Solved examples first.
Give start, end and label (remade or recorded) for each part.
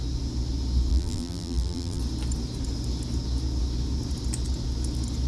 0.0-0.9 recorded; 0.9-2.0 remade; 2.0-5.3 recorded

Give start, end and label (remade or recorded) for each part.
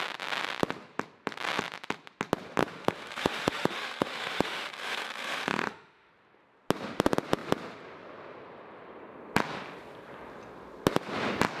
0.0-2.6 recorded; 2.6-6.1 remade; 6.1-11.6 recorded